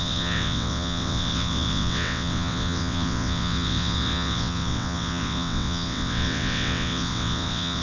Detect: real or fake fake